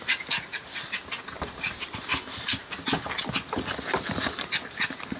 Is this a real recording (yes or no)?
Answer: yes